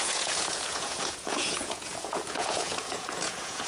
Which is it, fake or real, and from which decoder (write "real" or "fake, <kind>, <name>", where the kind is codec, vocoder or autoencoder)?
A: fake, vocoder, Vocos